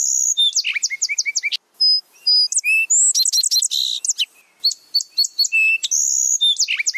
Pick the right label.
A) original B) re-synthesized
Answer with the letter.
A